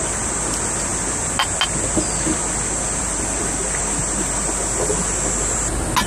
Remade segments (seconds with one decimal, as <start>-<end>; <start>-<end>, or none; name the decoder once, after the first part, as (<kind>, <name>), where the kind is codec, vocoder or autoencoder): none